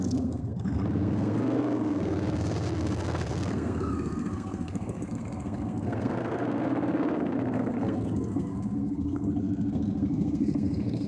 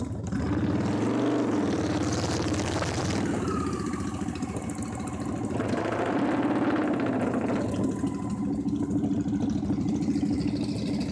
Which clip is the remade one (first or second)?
first